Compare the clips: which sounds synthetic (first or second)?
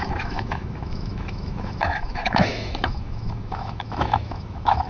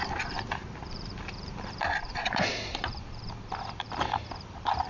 first